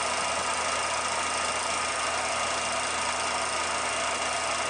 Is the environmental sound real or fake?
real